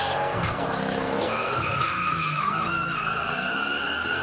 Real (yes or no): no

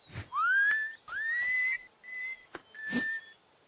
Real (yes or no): yes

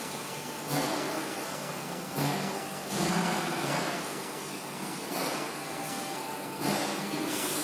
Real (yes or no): no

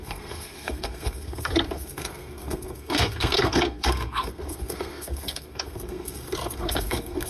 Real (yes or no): no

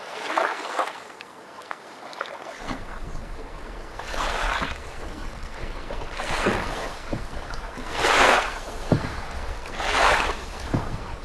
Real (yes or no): no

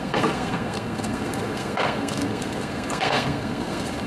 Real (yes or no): no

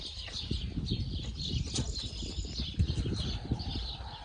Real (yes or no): yes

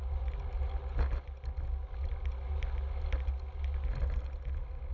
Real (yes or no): yes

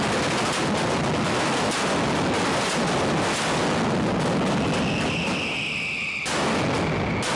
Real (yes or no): yes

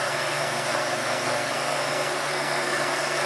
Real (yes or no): no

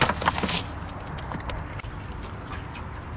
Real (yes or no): yes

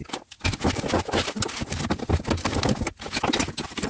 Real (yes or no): yes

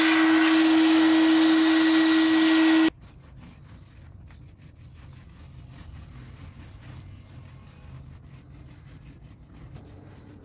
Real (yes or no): yes